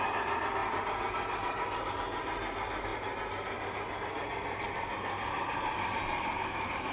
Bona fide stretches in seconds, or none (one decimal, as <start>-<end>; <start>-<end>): 0.0-6.9